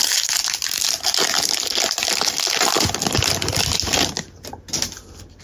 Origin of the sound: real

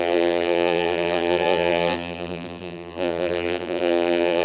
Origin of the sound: fake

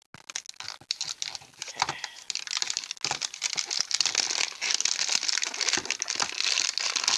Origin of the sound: real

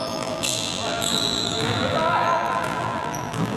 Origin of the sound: fake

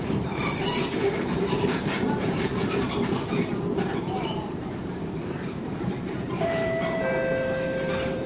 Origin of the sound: fake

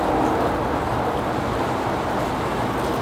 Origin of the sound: real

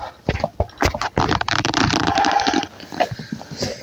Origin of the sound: fake